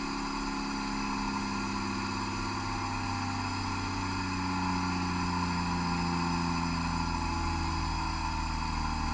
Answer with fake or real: real